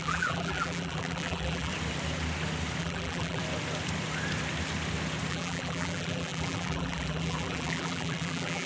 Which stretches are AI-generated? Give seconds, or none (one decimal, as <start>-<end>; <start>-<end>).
0.0-1.7; 2.8-3.4; 5.3-8.7